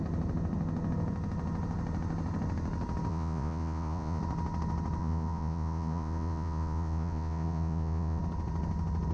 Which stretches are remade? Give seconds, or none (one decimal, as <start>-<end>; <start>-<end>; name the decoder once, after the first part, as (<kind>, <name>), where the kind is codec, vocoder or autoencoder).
3.1-4.2 (vocoder, Vocos); 5.0-8.2